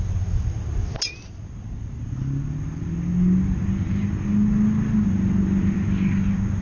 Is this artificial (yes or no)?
no